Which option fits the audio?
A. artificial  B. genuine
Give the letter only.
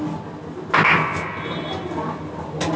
B